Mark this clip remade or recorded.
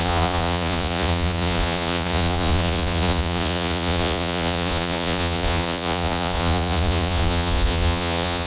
remade